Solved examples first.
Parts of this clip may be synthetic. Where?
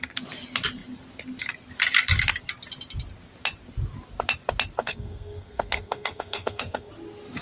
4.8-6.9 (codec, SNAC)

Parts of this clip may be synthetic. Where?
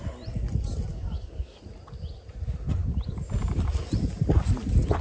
0.9-1.6 (codec, DAC)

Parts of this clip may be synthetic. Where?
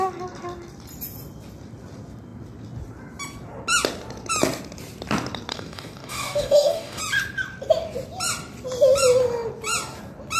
5.5-7.0 (codec, DAC)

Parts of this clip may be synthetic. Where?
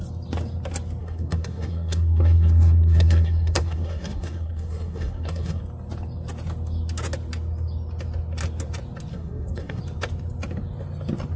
1.0-5.6 (codec, SNAC); 9.1-9.8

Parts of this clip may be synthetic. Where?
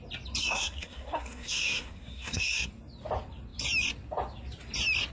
0.4-2.7 (codec, SNAC)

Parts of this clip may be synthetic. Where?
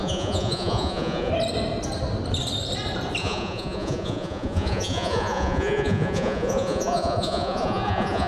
0.0-1.3 (vocoder, Vocos); 3.2-8.3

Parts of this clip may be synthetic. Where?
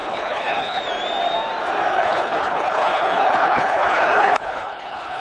0.0-0.8 (codec, HILCodec); 1.9-5.2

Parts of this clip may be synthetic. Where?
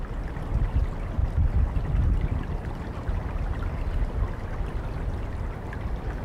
none